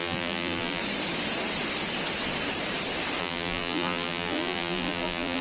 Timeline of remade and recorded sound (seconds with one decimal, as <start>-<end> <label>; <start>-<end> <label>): 0.0-0.8 remade; 0.8-3.2 recorded; 3.2-5.4 remade